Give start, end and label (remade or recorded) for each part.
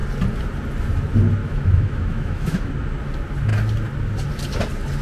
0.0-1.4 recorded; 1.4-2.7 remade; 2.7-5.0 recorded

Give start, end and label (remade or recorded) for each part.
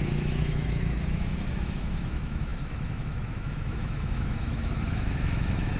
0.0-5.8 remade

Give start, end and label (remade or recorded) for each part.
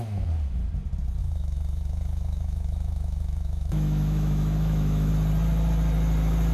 0.0-1.2 recorded; 1.2-5.1 remade; 5.1-6.5 recorded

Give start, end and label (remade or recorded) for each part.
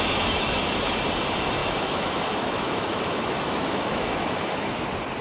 0.0-1.0 remade; 1.0-1.6 recorded; 1.6-4.7 remade; 4.7-5.2 recorded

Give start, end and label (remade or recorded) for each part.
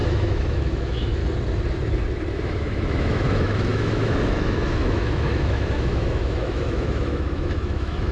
0.0-1.2 remade; 1.2-2.3 recorded; 2.3-8.1 remade